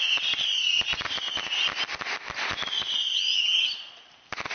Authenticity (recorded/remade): recorded